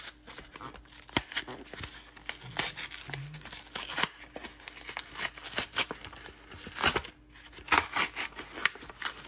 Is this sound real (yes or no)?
yes